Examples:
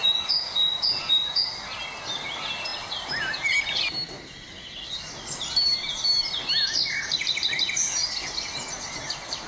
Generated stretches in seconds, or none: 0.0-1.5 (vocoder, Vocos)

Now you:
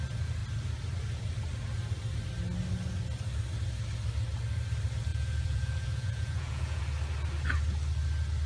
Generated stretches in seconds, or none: 5.1-6.8 (vocoder, Vocos)